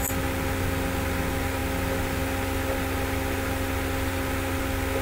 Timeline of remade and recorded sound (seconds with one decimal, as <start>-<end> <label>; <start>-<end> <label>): 0.0-5.0 recorded